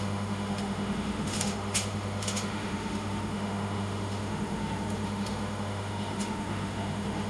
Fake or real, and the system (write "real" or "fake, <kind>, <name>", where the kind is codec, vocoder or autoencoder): fake, autoencoder, DAC-VAE